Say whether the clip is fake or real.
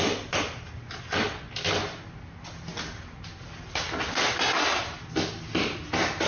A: real